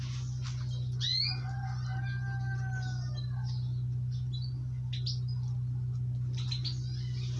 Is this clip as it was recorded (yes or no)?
yes